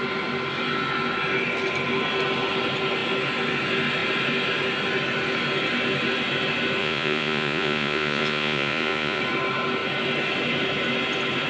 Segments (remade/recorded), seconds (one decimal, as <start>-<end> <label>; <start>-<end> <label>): 0.0-6.8 recorded; 6.8-9.2 remade; 9.2-11.5 recorded